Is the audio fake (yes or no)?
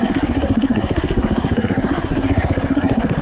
yes